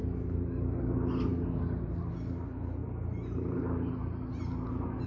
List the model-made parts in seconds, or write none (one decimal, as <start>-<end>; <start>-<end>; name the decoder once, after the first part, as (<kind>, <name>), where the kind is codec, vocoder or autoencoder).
none